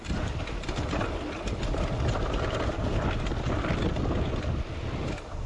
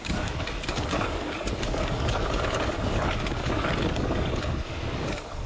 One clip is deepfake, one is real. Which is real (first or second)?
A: first